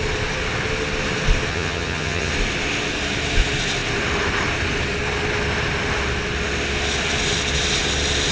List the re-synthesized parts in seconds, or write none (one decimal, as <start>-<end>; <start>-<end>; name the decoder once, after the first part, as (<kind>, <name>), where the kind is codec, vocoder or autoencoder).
1.5-2.3 (vocoder, HiFi-GAN)